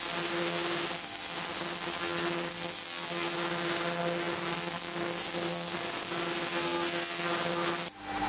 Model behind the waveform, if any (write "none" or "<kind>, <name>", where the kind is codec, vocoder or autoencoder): none